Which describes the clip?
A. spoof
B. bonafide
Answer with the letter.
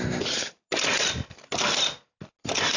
B